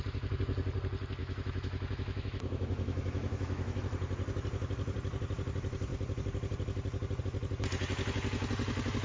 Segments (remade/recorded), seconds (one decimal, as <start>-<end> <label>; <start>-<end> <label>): 0.0-1.2 recorded; 1.2-3.8 remade; 3.8-9.0 recorded